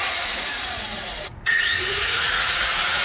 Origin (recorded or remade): remade